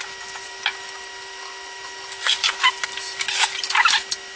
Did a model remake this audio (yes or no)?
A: no